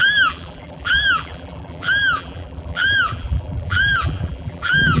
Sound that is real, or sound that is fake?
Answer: fake